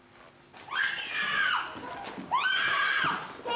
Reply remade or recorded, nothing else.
recorded